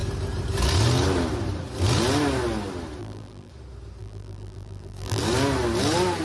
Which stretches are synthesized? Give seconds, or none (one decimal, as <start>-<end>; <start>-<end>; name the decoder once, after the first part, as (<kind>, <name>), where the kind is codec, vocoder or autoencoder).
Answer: 3.0-3.5 (vocoder, BigVGAN v2); 4.0-5.2